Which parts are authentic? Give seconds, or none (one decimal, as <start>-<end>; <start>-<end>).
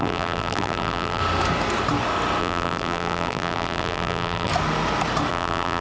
1.2-2.4; 4.5-5.3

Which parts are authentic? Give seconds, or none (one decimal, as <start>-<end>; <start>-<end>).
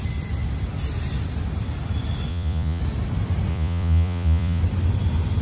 0.0-2.3; 2.8-3.5; 4.6-5.4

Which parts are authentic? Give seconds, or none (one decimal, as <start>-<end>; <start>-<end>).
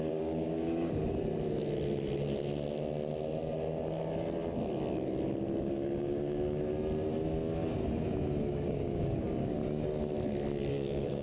1.0-5.6; 6.7-8.5; 9.6-10.7